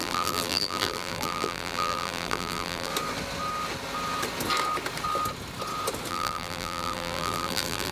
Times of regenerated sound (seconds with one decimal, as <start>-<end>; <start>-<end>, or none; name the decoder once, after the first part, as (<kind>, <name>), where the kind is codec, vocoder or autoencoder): 0.0-2.9 (vocoder, BigVGAN v2); 6.1-7.9